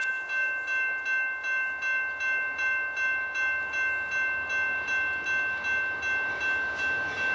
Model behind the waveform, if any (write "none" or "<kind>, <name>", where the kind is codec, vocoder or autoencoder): none